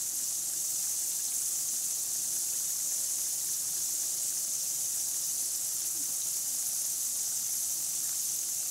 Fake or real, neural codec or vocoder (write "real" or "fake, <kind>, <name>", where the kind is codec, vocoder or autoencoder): real